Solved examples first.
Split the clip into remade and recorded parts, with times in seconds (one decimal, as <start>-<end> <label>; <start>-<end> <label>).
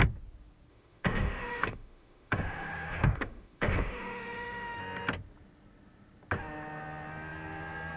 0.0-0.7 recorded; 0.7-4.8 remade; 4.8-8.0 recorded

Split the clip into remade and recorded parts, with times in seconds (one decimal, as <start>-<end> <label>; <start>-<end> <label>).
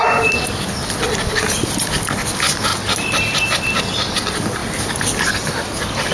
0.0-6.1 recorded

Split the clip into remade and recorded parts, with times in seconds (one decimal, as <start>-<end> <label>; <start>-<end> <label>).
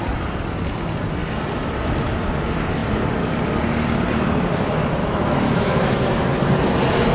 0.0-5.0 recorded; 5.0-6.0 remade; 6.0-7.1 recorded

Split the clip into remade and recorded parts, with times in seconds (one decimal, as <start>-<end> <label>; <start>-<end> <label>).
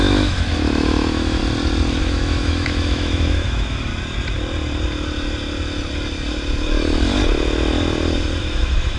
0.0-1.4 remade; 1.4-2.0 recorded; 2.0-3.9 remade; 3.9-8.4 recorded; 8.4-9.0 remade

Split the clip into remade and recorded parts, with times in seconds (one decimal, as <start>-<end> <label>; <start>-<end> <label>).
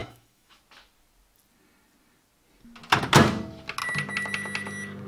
0.0-0.6 remade; 0.6-5.1 recorded